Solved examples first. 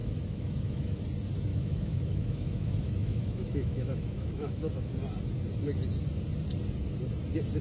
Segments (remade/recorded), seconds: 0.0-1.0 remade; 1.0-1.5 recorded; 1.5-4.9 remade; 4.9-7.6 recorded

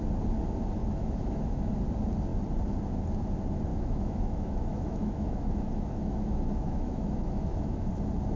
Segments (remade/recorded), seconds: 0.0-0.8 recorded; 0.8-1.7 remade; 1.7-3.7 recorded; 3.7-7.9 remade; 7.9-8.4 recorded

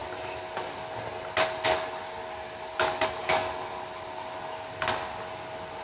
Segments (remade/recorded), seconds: 0.0-5.8 recorded

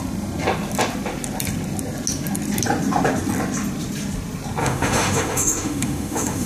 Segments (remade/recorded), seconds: 0.0-4.6 recorded; 4.6-6.5 remade

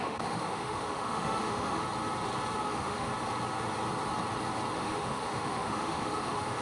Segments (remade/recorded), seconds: 0.0-1.8 remade; 1.8-2.6 recorded; 2.6-3.1 remade; 3.1-4.7 recorded; 4.7-6.6 remade

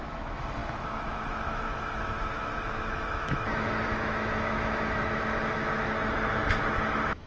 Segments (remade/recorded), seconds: 0.0-7.3 remade